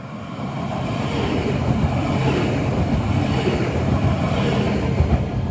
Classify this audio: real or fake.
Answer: real